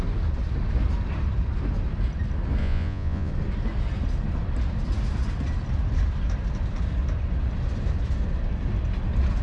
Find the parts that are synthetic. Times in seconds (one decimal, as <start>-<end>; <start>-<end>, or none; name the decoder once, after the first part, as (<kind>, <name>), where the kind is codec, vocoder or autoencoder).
2.6-3.3 (vocoder, Vocos)